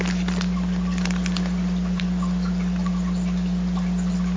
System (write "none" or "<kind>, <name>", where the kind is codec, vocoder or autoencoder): none